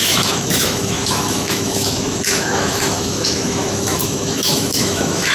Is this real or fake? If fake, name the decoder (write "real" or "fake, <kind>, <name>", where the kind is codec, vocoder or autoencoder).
fake, autoencoder, DAC-VAE